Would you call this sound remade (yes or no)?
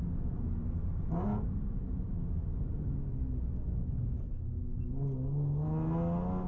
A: no